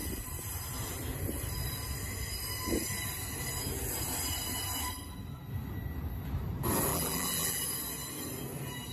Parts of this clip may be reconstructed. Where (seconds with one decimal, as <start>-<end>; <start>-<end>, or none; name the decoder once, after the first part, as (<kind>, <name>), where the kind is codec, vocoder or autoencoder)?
6.9-7.6 (vocoder, BigVGAN v2)